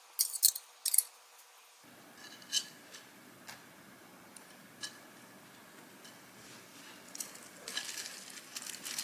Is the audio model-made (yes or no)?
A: no